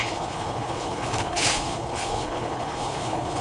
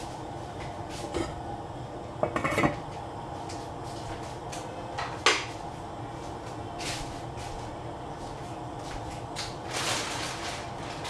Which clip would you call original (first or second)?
second